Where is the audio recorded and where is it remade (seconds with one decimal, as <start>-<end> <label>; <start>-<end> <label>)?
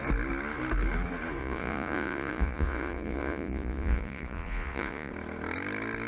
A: 0.0-1.4 recorded; 1.4-5.1 remade; 5.1-6.1 recorded